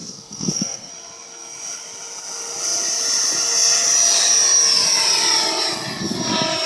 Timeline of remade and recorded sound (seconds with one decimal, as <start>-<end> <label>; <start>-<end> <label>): 0.0-0.9 remade; 0.9-6.7 recorded